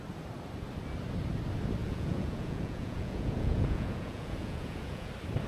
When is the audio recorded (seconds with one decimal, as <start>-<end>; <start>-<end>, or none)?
0.0-1.8; 5.1-5.5

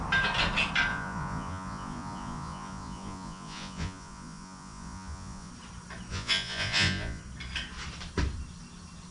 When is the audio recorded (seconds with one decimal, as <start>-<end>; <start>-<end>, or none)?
0.0-0.9; 5.5-6.1; 7.2-9.1